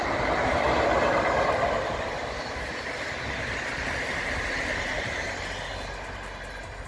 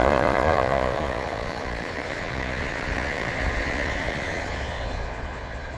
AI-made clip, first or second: second